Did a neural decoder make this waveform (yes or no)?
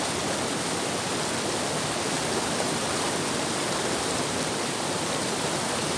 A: no